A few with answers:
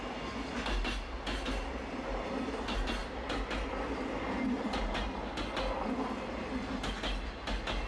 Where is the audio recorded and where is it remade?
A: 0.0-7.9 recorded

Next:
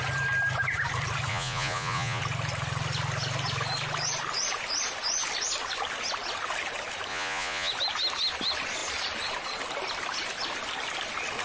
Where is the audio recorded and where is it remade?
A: 0.0-1.3 recorded; 1.3-2.2 remade; 2.2-7.1 recorded; 7.1-7.7 remade; 7.7-11.4 recorded